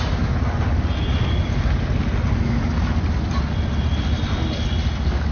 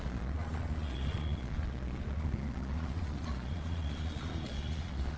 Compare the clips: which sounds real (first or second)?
first